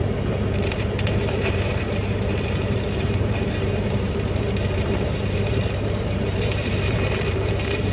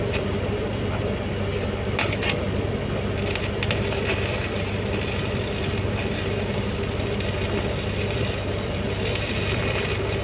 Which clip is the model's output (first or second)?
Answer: first